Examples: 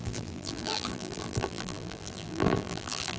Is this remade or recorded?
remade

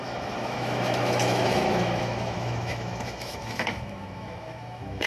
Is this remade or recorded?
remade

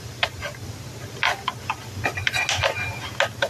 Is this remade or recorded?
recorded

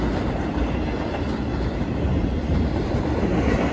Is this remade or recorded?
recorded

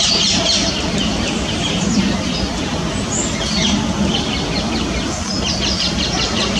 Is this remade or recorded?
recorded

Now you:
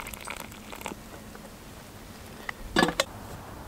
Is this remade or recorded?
recorded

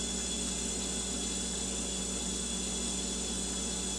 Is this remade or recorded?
recorded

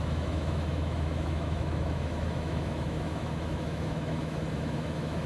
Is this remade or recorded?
remade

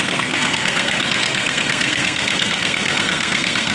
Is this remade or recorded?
remade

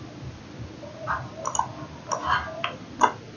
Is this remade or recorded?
recorded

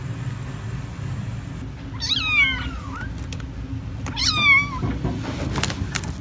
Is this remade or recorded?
recorded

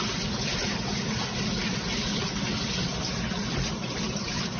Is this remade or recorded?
recorded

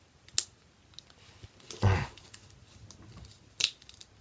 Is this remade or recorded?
recorded